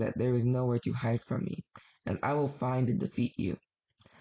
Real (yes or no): yes